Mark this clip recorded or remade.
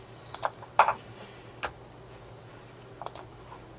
recorded